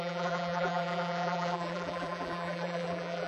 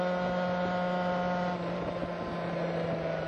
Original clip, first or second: second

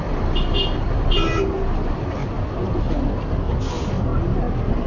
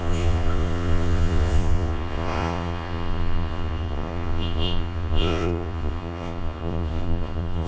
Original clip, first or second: first